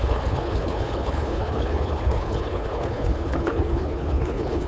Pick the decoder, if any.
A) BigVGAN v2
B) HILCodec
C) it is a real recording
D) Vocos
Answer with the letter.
B